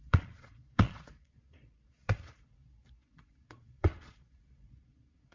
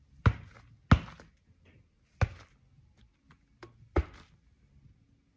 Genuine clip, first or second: second